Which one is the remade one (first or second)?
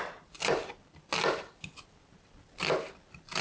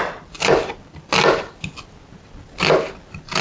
first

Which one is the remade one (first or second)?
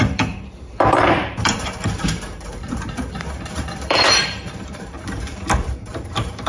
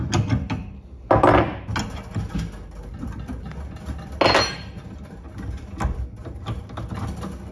first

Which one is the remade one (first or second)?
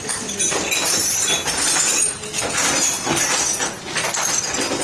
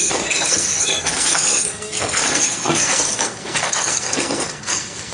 second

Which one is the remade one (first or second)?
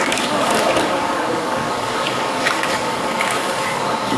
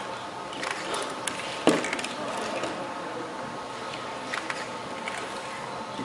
first